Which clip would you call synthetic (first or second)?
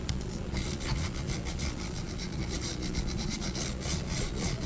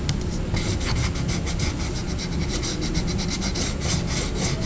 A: first